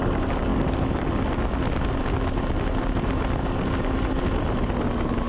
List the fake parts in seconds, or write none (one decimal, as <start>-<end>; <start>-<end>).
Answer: none